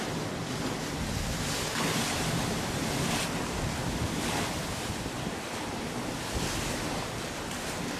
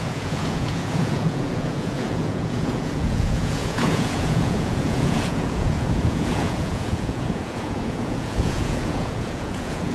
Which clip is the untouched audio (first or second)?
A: first